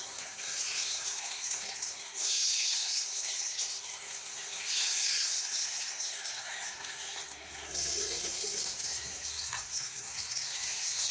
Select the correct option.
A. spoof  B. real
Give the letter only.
A